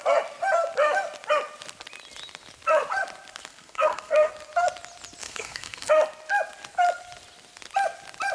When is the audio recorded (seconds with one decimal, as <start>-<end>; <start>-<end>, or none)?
0.0-3.5; 4.3-5.2; 5.9-8.3